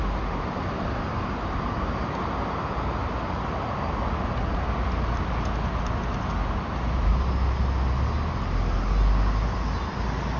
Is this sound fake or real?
real